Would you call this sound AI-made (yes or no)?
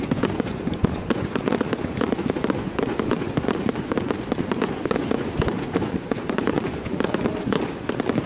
yes